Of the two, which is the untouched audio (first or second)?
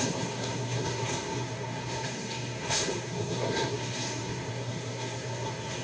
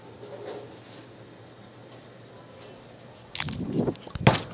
second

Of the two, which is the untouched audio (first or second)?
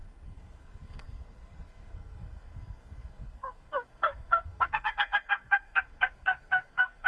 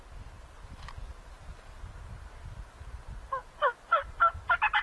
second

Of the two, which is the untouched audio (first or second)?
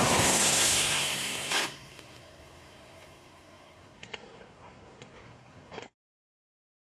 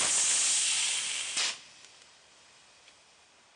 second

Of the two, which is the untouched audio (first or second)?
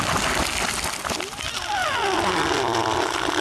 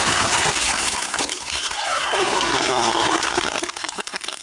first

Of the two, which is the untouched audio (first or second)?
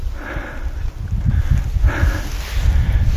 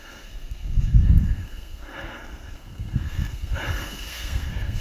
first